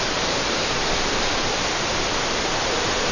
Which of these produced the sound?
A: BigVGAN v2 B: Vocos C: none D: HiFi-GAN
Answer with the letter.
C